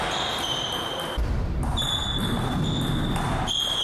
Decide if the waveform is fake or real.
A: real